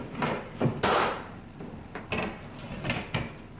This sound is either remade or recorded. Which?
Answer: recorded